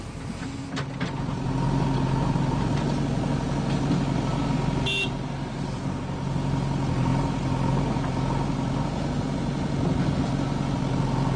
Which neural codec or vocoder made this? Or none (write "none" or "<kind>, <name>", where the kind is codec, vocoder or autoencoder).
none